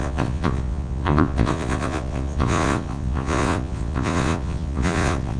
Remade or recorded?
remade